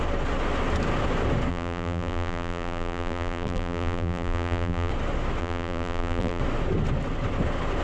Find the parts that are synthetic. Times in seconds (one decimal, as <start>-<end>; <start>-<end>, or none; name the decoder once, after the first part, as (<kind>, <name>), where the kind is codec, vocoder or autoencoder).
1.5-4.9 (vocoder, BigVGAN v2); 5.4-6.4